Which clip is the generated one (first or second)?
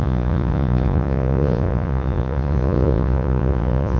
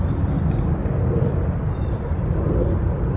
first